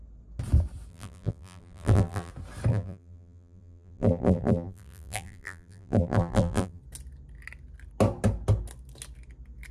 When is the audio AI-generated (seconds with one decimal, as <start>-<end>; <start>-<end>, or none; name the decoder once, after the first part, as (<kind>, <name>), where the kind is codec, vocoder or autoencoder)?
0.9-2.3 (vocoder, BigVGAN v2); 2.7-6.8